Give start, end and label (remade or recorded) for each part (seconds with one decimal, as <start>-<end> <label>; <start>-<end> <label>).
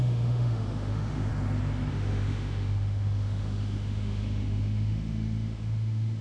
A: 0.0-1.3 remade; 1.3-1.9 recorded; 1.9-6.2 remade